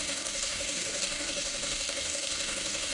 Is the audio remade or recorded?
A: remade